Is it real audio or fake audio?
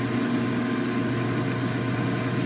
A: real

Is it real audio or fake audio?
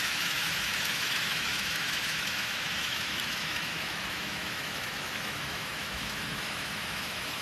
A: fake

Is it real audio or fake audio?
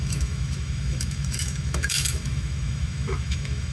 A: fake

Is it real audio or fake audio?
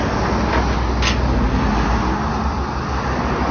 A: real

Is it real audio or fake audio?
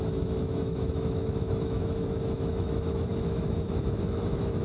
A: fake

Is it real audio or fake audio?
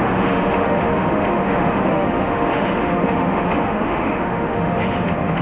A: fake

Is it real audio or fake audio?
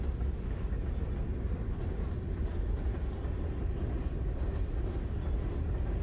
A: real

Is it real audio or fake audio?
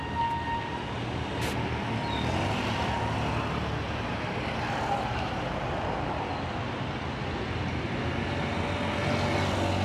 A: real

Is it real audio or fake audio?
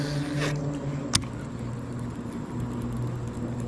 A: real